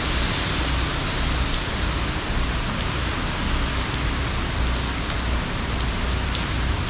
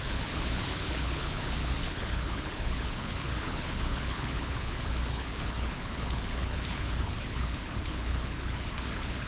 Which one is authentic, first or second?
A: first